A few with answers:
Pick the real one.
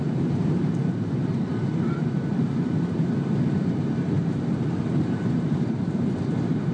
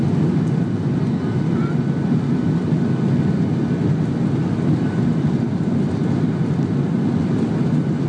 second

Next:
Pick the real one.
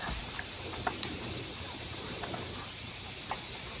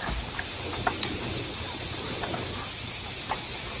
second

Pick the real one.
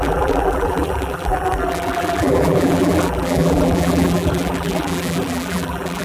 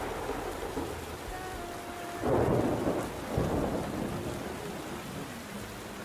second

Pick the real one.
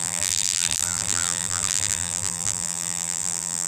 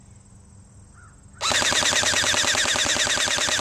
second